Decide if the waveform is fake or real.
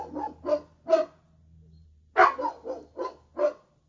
real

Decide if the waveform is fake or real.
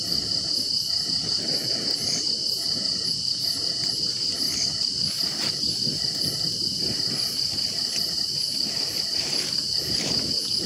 real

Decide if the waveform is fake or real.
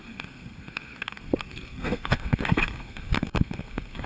fake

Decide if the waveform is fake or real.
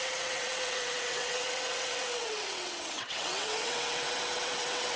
fake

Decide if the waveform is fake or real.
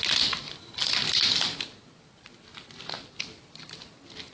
real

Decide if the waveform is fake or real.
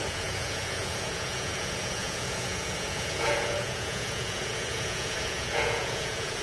fake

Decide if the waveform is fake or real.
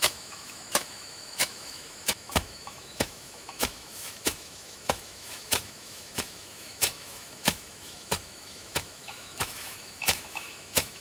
fake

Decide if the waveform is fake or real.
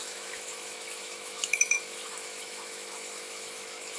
fake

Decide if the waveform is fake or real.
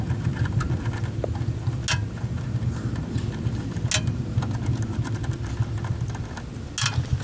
real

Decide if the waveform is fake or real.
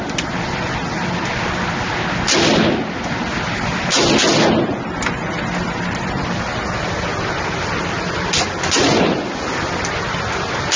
real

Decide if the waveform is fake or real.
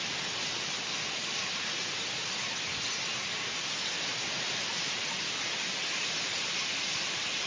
real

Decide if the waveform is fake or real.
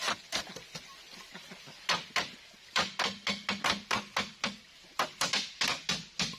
real